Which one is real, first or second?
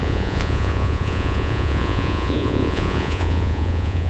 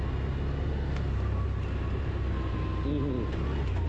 second